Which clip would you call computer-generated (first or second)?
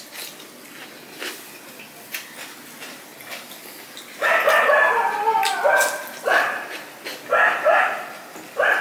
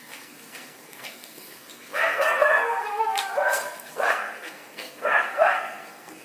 second